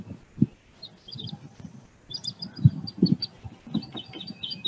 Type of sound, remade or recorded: recorded